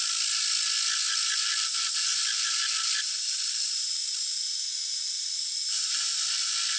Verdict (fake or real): real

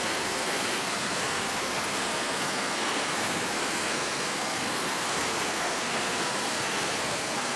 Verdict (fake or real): fake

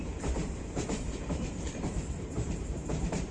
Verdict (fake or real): fake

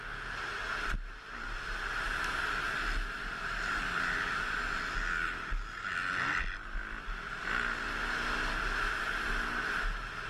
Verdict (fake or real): real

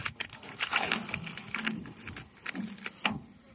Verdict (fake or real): fake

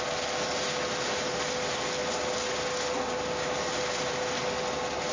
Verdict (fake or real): real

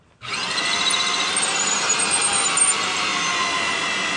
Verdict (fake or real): real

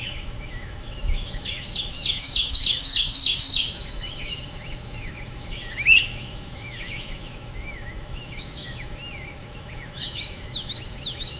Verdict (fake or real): fake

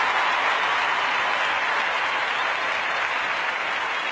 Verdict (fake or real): real